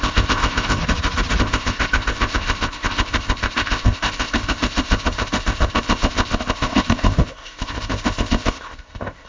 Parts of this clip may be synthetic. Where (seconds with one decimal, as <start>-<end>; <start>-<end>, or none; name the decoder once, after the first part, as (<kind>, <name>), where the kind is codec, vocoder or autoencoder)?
0.0-0.8 (codec, ZipCodec); 1.4-9.3